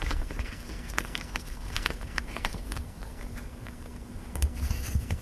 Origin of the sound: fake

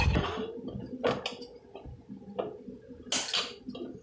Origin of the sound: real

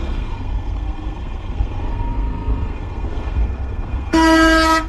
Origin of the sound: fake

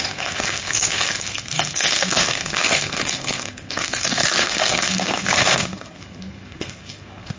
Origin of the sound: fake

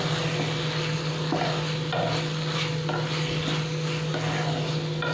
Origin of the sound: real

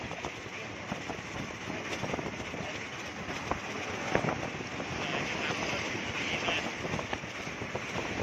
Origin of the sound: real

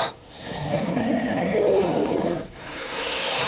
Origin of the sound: fake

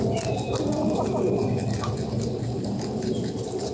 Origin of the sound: real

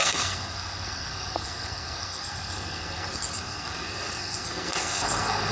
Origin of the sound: fake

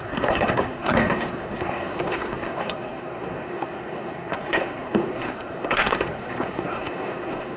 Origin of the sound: fake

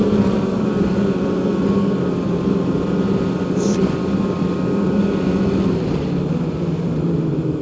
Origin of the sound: real